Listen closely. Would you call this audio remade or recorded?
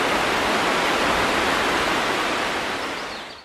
recorded